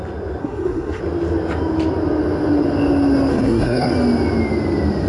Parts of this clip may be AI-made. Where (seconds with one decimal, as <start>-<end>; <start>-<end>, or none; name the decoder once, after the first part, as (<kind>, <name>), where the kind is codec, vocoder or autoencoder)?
0.4-1.0 (codec, SNAC); 3.3-3.9